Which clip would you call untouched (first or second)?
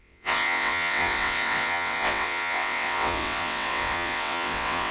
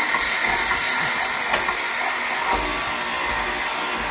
second